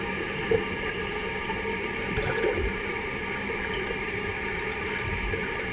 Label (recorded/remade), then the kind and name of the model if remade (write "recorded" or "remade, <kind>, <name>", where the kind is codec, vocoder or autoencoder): remade, vocoder, BigVGAN v2